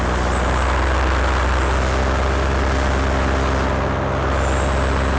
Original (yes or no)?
yes